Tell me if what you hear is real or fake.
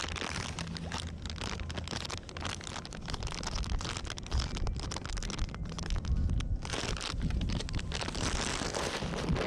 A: real